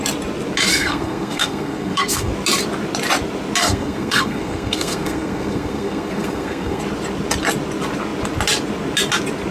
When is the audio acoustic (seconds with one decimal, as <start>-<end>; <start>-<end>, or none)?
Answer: 0.0-0.7; 2.3-3.6; 6.8-9.5